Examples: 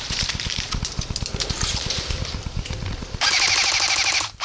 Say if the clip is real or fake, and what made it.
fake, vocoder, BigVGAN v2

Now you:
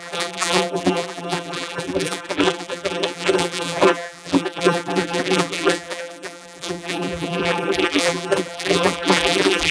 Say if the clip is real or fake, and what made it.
fake, vocoder, BigVGAN v2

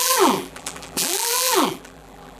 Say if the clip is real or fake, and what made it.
fake, vocoder, BigVGAN v2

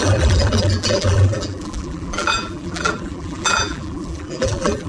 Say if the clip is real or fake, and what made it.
fake, vocoder, BigVGAN v2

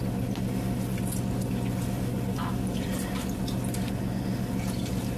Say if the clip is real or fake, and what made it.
real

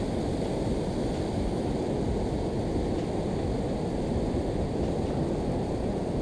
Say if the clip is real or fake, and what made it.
real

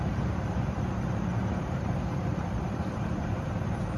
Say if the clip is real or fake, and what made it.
fake, vocoder, BigVGAN v2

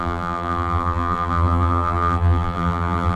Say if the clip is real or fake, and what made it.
fake, vocoder, BigVGAN v2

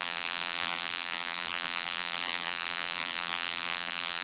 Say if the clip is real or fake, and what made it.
fake, vocoder, BigVGAN v2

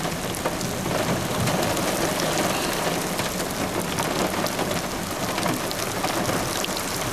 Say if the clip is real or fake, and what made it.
real